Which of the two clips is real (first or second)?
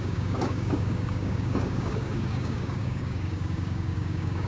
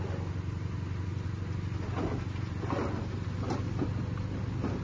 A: second